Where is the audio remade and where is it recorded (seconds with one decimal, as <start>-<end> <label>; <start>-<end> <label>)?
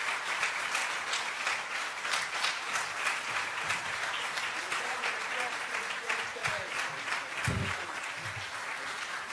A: 0.0-0.8 remade; 0.8-3.2 recorded; 3.2-6.4 remade; 6.4-8.7 recorded; 8.7-9.3 remade